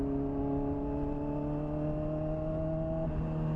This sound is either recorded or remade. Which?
recorded